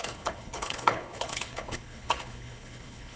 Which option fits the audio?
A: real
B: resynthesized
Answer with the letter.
B